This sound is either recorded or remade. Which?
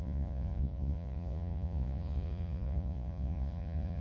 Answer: remade